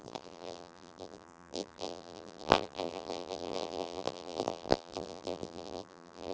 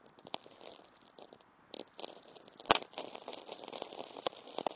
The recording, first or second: second